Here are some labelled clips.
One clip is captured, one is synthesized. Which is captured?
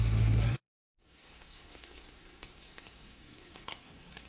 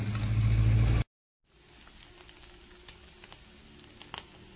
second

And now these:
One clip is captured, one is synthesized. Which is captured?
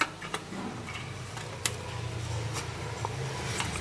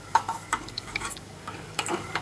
first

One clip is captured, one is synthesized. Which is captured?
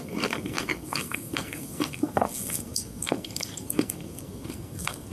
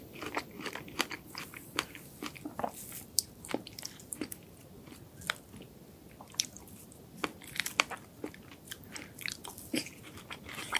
second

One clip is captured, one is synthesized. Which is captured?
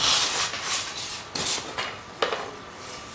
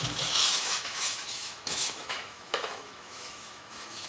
first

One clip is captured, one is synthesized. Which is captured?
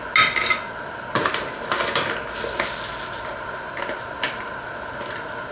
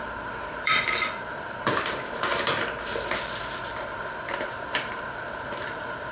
first